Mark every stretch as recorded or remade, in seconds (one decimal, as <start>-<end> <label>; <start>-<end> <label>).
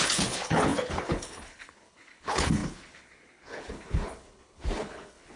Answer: 0.0-5.4 remade